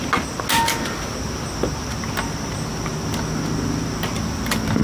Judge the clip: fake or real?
real